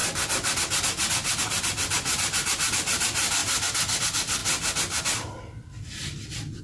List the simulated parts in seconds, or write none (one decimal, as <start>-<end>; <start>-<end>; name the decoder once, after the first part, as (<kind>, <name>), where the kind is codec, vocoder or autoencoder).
1.4-3.4 (vocoder, BigVGAN v2); 4.0-4.4